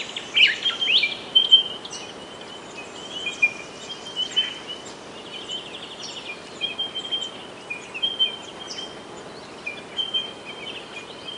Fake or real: real